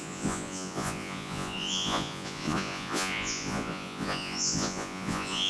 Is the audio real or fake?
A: fake